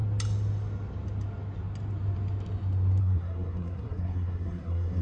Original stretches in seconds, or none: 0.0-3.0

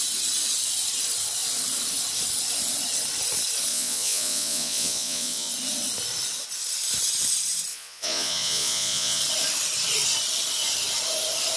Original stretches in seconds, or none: 0.0-3.7; 5.5-7.7; 9.2-11.6

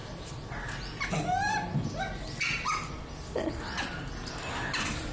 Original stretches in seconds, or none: 0.0-5.1

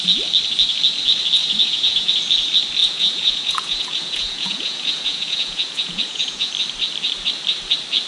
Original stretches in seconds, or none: 0.0-1.4; 2.1-2.8; 6.5-8.1

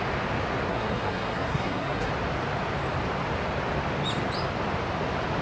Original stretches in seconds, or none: 0.0-0.7; 2.1-5.4

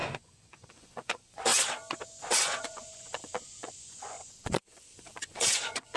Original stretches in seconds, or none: 1.5-2.2

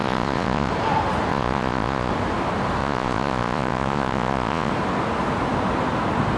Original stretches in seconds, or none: 0.7-1.3; 2.1-2.8; 4.7-6.4